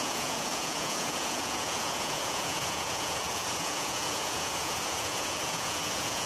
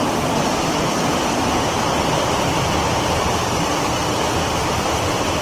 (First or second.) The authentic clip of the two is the second